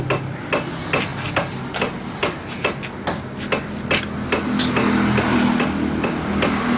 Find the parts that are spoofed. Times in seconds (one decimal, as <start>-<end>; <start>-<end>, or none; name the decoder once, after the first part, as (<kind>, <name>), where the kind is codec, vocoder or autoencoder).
none